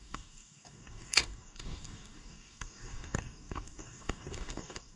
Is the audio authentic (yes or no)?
no